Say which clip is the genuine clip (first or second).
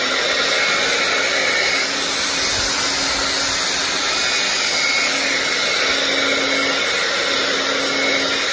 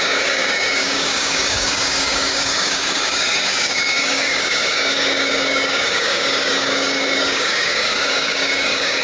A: first